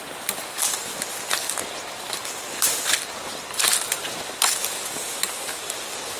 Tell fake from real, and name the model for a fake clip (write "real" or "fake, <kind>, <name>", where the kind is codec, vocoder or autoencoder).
real